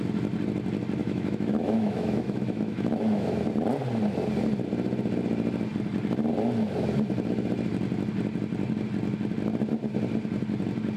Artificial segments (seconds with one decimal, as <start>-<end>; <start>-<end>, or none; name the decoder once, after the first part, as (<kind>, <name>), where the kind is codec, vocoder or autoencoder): 1.0-3.4 (autoencoder, DAC-VAE)